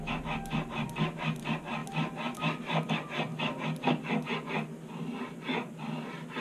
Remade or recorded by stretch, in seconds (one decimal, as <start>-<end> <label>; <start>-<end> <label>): 0.0-6.4 recorded